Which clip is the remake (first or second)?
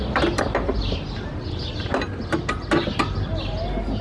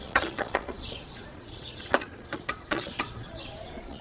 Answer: second